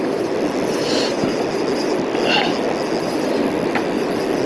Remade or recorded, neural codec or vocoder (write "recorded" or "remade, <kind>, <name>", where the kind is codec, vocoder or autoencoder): recorded